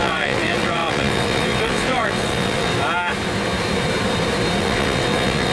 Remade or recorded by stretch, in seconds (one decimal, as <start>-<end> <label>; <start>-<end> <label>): 0.0-2.7 remade; 2.7-4.6 recorded; 4.6-5.5 remade